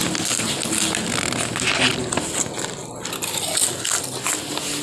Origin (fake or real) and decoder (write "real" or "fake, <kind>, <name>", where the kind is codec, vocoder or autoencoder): real